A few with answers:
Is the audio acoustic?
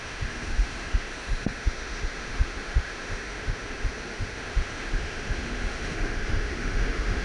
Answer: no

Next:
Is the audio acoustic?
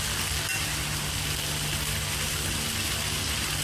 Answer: yes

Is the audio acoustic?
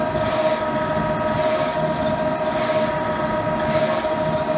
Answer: yes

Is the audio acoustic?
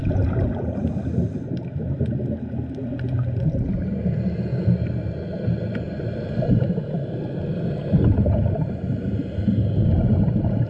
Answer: yes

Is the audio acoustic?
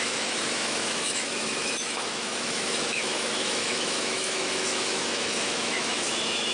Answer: no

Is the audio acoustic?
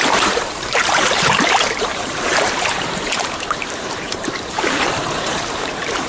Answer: no